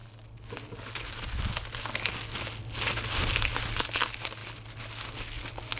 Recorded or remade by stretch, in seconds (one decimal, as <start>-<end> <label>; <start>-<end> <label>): 0.0-5.8 recorded